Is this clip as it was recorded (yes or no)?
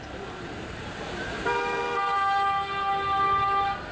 no